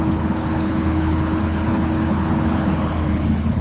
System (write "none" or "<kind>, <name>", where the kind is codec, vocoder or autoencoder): codec, HILCodec